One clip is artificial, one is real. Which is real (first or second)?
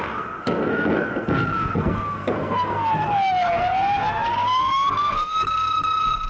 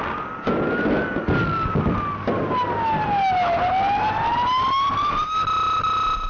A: second